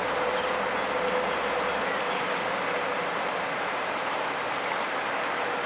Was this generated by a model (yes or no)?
no